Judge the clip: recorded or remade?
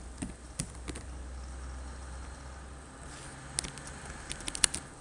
recorded